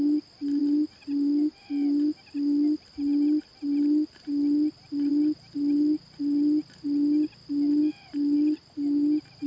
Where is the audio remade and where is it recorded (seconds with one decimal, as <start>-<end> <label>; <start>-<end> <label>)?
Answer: 0.0-9.5 recorded